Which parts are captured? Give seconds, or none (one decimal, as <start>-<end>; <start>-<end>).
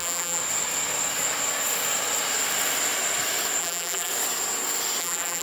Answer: 0.4-3.6; 4.1-5.0